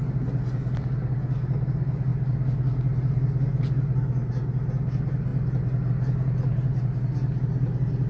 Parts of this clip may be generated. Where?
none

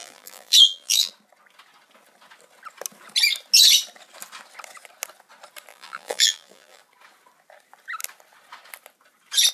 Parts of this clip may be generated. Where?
0.0-1.1 (vocoder, BigVGAN v2); 5.7-6.8